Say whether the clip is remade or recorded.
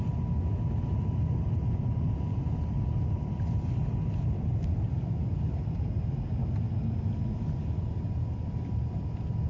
recorded